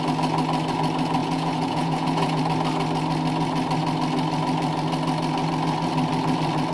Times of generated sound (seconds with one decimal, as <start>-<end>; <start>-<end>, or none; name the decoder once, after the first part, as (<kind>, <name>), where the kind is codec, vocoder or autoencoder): 1.2-2.4 (vocoder, Vocos)